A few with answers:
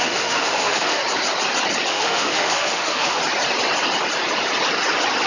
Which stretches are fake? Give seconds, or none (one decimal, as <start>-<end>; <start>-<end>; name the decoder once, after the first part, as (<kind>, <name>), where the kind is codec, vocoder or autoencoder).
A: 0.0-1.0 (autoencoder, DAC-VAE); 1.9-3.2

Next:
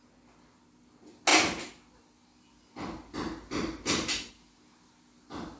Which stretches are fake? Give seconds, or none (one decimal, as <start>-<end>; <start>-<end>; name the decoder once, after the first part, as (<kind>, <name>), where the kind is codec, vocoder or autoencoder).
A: none

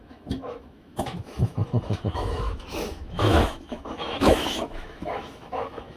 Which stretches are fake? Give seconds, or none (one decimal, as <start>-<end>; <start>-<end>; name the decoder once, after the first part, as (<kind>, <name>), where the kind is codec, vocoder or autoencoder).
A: 0.0-6.0 (autoencoder, DAC-VAE)